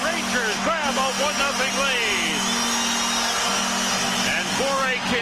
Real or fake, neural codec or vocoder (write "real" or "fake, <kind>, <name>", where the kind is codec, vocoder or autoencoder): real